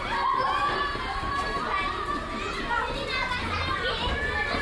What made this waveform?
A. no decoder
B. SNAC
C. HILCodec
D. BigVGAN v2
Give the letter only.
A